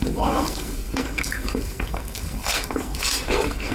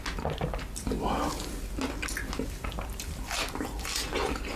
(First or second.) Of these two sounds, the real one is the second